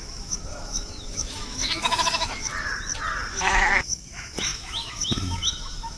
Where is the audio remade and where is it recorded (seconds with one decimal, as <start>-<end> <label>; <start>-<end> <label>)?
0.0-2.5 remade; 2.5-3.3 recorded; 3.3-6.0 remade